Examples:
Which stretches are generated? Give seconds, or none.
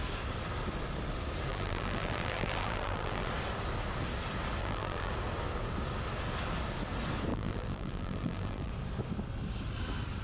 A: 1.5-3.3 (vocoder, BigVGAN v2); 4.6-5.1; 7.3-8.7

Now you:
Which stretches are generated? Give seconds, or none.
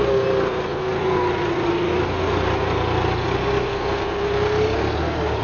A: none